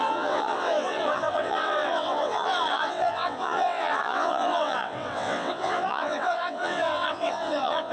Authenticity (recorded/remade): remade